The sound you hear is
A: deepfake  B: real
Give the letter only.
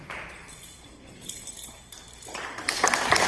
B